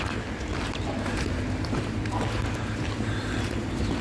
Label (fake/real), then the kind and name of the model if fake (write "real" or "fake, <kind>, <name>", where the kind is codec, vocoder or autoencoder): real